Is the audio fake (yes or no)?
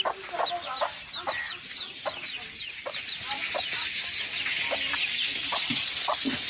no